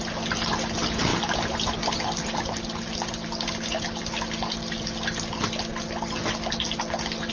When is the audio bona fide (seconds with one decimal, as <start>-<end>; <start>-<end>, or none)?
0.0-7.3